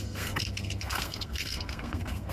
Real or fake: fake